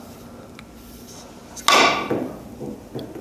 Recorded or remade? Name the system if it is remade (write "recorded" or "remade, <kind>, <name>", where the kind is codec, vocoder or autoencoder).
recorded